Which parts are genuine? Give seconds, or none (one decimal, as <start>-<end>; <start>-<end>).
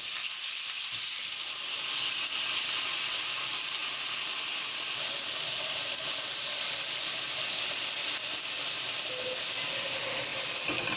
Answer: 0.0-11.0